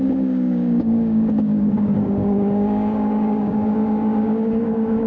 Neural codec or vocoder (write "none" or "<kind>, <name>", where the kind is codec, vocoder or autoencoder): codec, DAC